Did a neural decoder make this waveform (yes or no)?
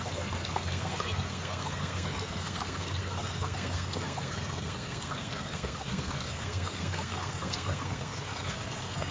yes